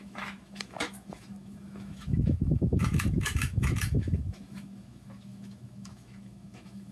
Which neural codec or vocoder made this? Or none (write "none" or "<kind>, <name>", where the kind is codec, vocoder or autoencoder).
autoencoder, DAC-VAE